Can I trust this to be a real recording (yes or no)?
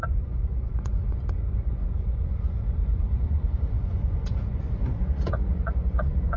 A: no